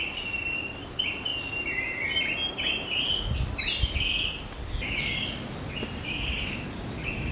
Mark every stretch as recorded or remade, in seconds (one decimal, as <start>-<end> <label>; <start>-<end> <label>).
0.0-7.3 recorded